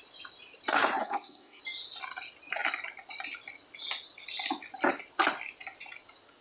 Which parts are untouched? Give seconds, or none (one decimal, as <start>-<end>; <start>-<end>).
0.0-1.0; 1.6-6.4